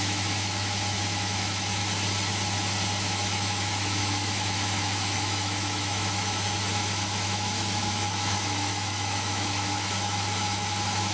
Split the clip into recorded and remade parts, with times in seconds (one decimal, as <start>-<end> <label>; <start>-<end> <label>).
0.0-1.8 remade; 1.8-3.0 recorded; 3.0-11.1 remade